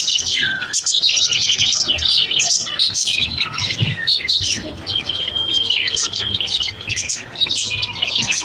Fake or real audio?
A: fake